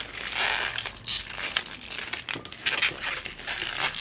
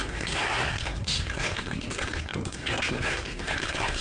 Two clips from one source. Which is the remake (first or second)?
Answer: second